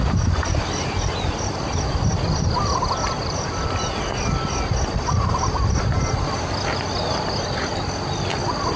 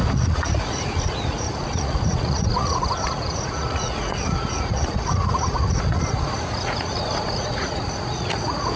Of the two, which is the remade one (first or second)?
second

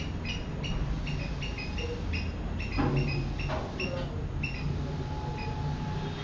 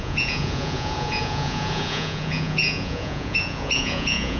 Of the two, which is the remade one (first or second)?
second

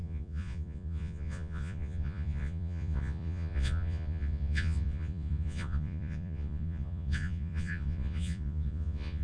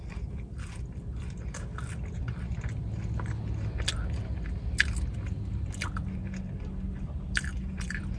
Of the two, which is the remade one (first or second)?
first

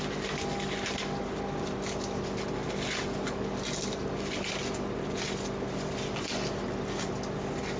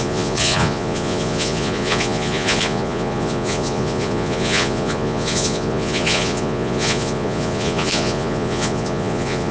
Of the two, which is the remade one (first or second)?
second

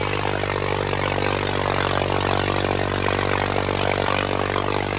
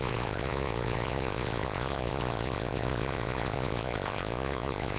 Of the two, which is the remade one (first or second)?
second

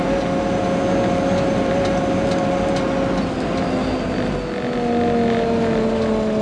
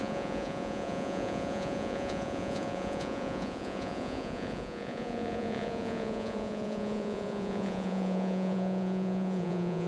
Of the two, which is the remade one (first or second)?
second